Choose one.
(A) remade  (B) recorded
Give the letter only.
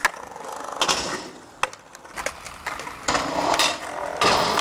B